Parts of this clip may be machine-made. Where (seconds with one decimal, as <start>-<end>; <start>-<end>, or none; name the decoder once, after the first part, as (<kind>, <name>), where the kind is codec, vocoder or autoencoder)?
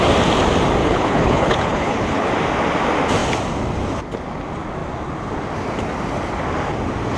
0.8-2.3 (codec, HILCodec)